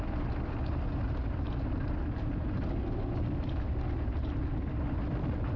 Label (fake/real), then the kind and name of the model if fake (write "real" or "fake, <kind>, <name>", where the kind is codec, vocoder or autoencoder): real